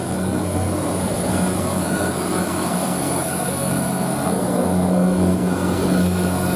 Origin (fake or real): fake